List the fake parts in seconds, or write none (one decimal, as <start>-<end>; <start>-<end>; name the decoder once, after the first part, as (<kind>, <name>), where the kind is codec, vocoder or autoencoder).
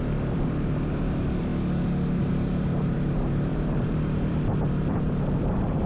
0.0-1.5 (vocoder, BigVGAN v2); 2.3-5.9